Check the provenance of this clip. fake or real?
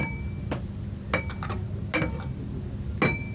real